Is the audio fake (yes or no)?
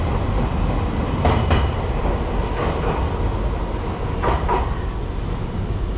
no